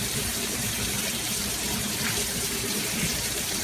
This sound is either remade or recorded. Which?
remade